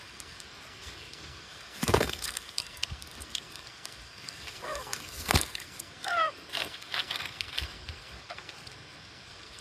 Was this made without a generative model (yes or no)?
no